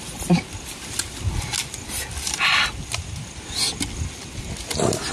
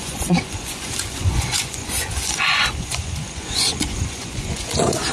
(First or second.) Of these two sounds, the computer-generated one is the second